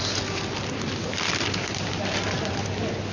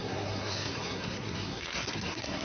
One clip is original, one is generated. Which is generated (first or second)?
second